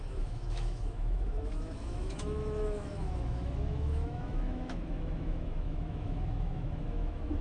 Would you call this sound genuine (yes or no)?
no